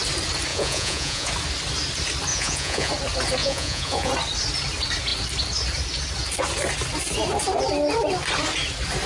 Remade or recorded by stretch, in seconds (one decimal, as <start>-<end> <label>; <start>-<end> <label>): 0.0-0.5 recorded; 0.5-1.3 remade; 1.3-2.3 recorded; 2.3-2.9 remade; 2.9-3.4 recorded; 3.4-4.1 remade; 4.1-9.1 recorded